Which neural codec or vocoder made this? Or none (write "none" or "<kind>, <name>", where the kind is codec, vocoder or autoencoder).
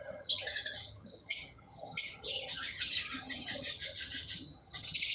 vocoder, HiFi-GAN